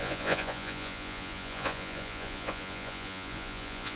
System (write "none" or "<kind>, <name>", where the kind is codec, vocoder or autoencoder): vocoder, Vocos